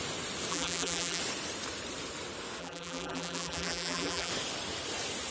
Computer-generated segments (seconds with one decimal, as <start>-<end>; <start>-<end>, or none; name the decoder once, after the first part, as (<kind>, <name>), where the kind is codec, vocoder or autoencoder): 0.5-1.2 (vocoder, BigVGAN v2); 2.6-4.3